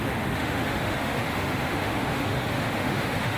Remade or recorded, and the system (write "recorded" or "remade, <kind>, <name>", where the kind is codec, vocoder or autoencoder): remade, autoencoder, DAC-VAE